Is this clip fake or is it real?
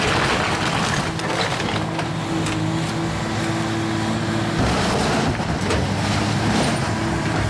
real